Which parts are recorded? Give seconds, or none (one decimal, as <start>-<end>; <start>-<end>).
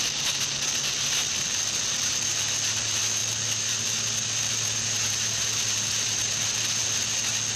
0.0-7.6